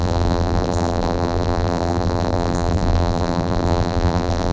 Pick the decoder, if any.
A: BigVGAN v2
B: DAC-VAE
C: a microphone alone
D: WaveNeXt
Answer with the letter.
A